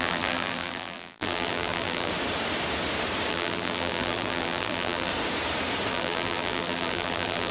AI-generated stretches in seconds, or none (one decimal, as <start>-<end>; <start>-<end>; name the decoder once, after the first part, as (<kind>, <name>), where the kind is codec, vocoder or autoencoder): 0.0-2.1 (vocoder, BigVGAN v2); 3.3-5.1; 5.9-7.5